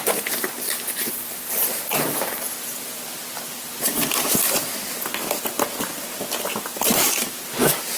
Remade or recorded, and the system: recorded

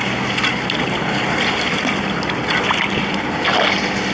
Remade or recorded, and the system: recorded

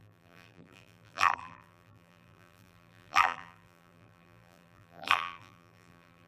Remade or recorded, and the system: remade, vocoder, BigVGAN v2